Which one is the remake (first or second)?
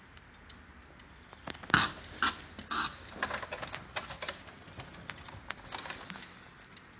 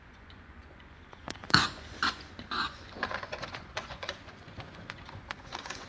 second